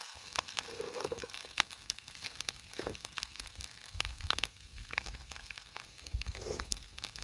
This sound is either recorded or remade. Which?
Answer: remade